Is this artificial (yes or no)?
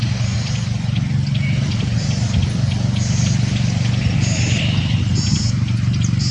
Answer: no